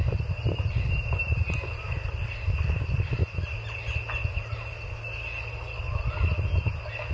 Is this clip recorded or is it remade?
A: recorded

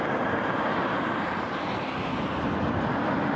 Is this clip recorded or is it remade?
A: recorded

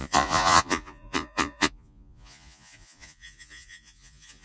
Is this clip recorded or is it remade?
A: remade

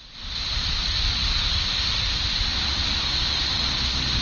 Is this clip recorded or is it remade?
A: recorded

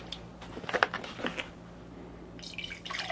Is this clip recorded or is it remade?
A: recorded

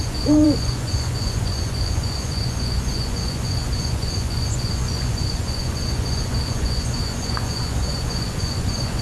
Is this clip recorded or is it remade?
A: remade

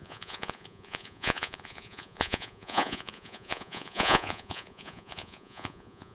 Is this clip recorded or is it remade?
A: remade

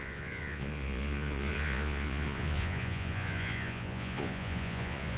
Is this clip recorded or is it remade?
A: remade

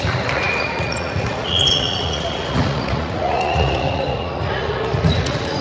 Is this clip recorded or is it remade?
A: remade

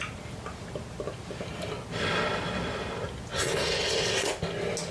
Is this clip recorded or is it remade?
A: recorded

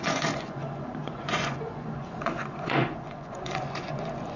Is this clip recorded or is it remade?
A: remade